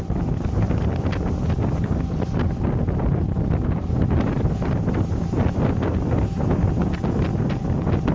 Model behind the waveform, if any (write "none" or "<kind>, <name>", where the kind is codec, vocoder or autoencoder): none